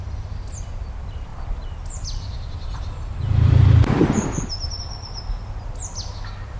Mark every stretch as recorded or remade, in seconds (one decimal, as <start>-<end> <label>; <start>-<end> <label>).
0.0-1.3 recorded; 1.3-4.8 remade; 4.8-6.6 recorded

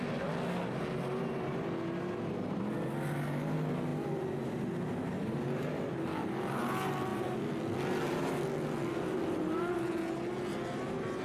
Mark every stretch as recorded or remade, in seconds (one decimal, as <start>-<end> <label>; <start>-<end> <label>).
0.0-3.9 recorded; 3.9-6.0 remade; 6.0-7.1 recorded; 7.1-7.6 remade; 7.6-11.2 recorded

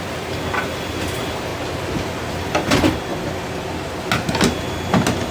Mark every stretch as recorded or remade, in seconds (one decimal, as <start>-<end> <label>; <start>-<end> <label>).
0.0-1.5 remade; 1.5-2.6 recorded; 2.6-3.1 remade; 3.1-5.3 recorded

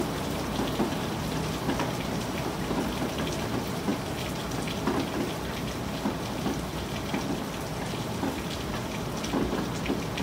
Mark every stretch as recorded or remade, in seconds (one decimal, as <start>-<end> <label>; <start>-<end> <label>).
0.0-10.2 recorded

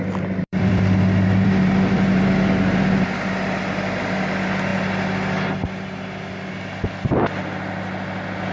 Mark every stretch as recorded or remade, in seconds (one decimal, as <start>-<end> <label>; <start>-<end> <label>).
0.0-2.3 remade; 2.3-4.7 recorded; 4.7-6.5 remade; 6.5-8.5 recorded

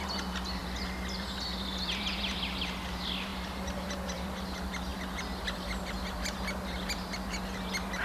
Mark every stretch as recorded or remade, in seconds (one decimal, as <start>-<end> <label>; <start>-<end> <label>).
0.0-8.0 recorded

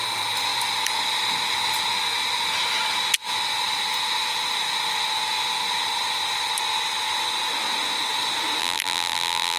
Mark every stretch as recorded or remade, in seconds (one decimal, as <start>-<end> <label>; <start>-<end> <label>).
0.0-8.6 recorded; 8.6-9.6 remade